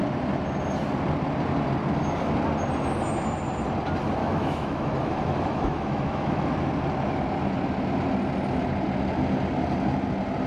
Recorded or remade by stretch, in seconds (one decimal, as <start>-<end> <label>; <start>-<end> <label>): 0.0-4.2 recorded; 4.2-6.5 remade; 6.5-10.5 recorded